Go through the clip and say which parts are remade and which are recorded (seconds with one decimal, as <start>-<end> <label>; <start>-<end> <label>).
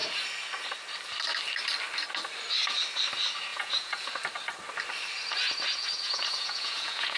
0.0-3.5 recorded; 3.5-4.1 remade; 4.1-6.0 recorded; 6.0-7.2 remade